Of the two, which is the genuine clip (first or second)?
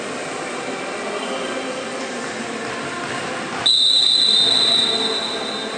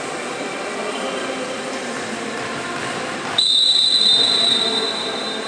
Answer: first